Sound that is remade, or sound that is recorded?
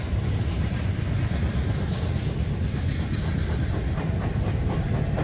recorded